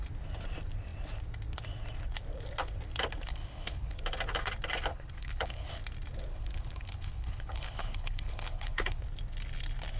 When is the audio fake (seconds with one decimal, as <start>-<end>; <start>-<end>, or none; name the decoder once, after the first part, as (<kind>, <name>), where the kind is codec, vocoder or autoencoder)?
3.3-4.0 (codec, HILCodec); 4.9-5.7; 6.3-9.0